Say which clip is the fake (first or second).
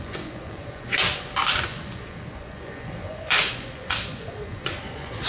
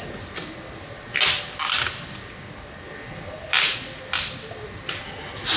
first